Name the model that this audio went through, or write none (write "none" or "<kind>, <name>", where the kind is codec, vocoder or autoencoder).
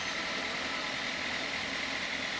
none